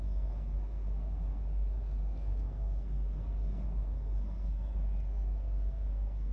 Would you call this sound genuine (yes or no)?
no